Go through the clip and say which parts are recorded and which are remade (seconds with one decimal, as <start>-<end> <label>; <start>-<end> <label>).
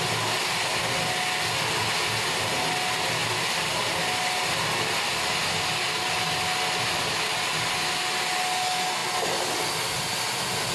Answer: 0.0-10.7 recorded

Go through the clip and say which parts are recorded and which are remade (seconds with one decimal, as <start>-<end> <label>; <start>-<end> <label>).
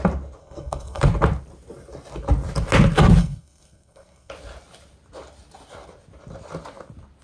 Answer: 0.0-0.4 recorded; 0.4-1.0 remade; 1.0-3.2 recorded; 3.2-4.3 remade; 4.3-7.2 recorded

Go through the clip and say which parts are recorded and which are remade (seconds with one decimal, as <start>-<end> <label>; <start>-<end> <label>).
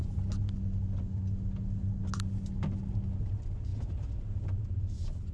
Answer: 0.0-5.3 recorded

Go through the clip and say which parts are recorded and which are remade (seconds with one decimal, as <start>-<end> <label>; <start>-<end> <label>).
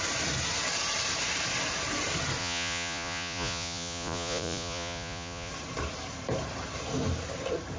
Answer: 0.0-2.4 recorded; 2.4-5.5 remade; 5.5-7.8 recorded